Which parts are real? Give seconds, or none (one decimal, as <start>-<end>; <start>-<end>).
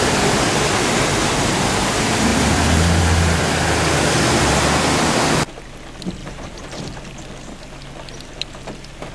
0.0-2.3; 3.4-6.2; 6.8-9.1